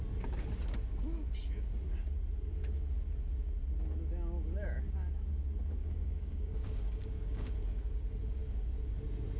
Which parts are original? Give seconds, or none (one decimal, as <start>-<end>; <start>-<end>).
0.0-5.8; 7.5-9.4

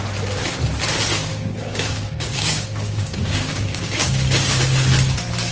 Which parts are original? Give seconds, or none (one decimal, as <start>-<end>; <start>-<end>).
0.0-1.3; 4.6-5.5

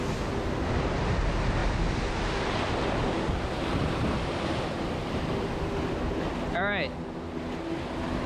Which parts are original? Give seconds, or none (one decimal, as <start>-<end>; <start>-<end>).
0.0-8.3

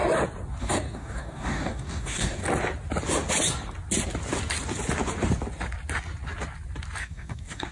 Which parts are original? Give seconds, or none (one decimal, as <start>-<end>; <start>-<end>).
0.0-0.6; 2.4-7.0

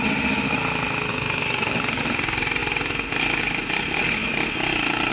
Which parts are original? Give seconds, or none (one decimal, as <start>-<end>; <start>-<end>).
0.0-1.1; 2.0-5.1

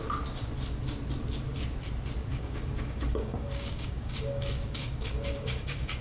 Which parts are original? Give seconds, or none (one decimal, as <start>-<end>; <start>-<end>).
0.0-2.3